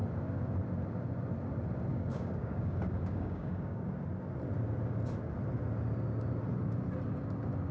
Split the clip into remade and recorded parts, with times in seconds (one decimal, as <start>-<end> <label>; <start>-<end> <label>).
0.0-1.9 recorded; 1.9-3.9 remade; 3.9-7.7 recorded